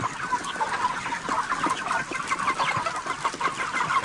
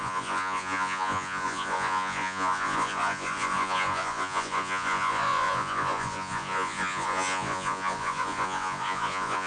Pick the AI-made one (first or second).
second